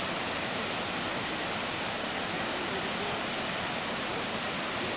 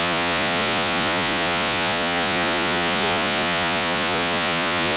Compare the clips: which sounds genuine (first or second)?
first